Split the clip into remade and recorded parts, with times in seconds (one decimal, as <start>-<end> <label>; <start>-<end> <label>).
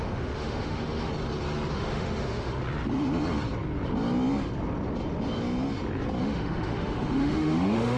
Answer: 0.0-1.1 remade; 1.1-1.7 recorded; 1.7-2.6 remade; 2.6-6.2 recorded; 6.2-8.0 remade